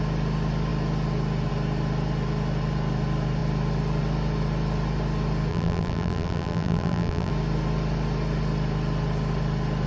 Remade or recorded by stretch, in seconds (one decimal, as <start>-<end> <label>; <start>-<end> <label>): 0.0-5.5 recorded; 5.5-7.3 remade; 7.3-9.9 recorded